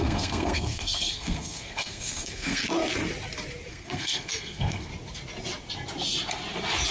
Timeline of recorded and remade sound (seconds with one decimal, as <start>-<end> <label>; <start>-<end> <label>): 0.0-2.6 remade; 2.6-3.7 recorded; 3.7-4.9 remade; 4.9-6.9 recorded